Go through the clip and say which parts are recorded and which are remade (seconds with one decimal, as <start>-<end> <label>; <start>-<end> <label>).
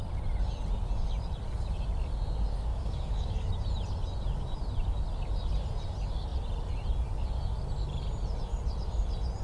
0.0-2.7 recorded; 2.7-3.5 remade; 3.5-9.4 recorded